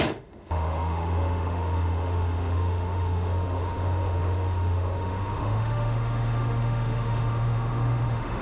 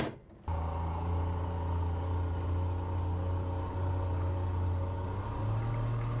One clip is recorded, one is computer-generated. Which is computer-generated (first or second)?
first